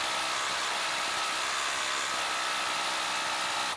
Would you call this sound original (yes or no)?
yes